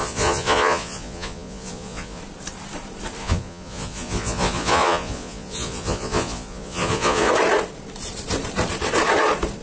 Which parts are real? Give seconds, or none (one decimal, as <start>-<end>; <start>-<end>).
2.2-3.2; 7.3-9.6